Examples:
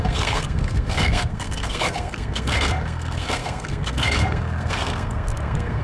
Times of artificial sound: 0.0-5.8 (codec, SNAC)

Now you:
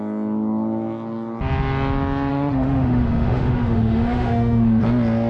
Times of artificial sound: 2.3-4.8 (autoencoder, DAC-VAE)

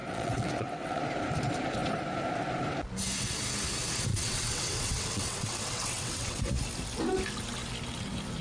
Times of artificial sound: 0.0-1.0 (vocoder, WaveNeXt); 4.1-6.5

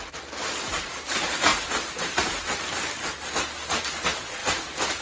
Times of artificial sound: none